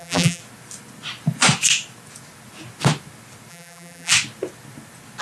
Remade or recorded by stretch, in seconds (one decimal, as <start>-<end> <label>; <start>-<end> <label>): 0.0-0.4 remade; 0.4-3.5 recorded; 3.5-4.1 remade; 4.1-5.2 recorded